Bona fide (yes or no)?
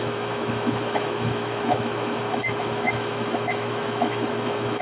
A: no